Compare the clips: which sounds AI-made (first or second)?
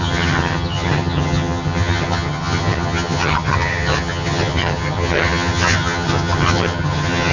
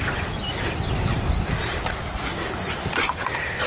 first